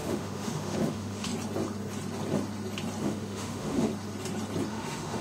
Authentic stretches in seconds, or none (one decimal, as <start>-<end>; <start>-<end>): 1.3-3.0; 3.9-4.7